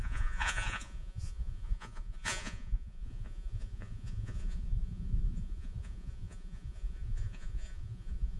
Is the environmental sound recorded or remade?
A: remade